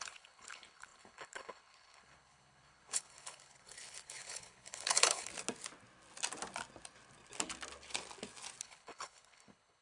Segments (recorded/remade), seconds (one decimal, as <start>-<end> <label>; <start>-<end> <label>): 0.0-5.3 remade; 5.3-8.6 recorded; 8.6-9.8 remade